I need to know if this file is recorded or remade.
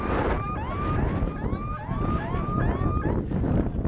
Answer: recorded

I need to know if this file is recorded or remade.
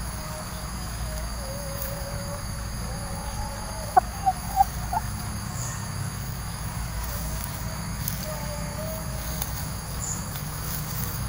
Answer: remade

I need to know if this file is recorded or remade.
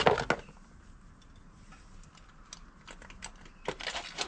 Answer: recorded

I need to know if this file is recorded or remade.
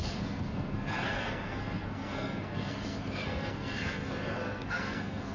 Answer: remade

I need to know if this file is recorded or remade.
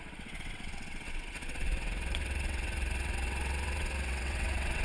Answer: remade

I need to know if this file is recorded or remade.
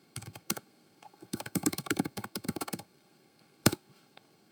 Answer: remade